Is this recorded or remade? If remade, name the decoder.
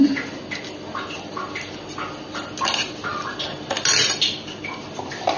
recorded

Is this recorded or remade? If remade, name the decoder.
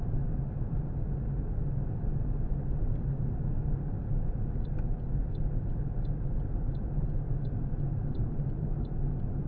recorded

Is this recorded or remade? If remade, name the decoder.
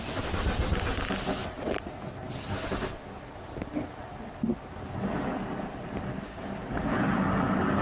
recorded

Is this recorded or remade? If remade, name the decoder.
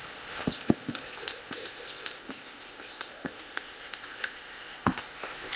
remade, codec, ZipCodec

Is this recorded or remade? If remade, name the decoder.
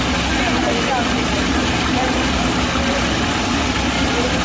recorded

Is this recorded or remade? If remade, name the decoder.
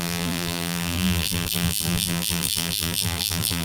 remade, vocoder, BigVGAN v2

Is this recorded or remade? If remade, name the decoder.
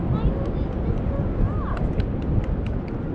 recorded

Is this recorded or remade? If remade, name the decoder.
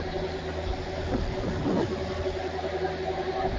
recorded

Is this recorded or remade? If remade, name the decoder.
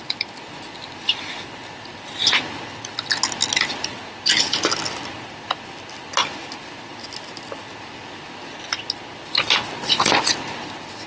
recorded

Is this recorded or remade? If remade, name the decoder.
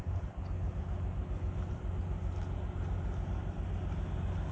recorded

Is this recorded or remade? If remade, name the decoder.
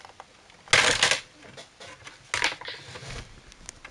recorded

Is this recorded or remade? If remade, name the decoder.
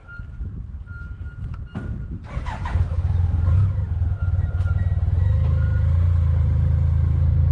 recorded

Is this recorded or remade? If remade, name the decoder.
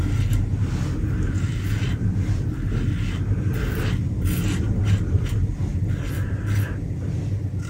recorded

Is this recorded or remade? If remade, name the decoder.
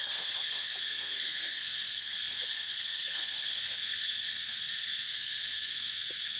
remade, codec, SNAC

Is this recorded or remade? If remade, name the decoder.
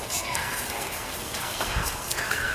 remade, codec, SNAC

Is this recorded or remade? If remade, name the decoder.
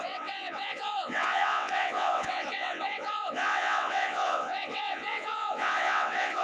remade, vocoder, WaveNeXt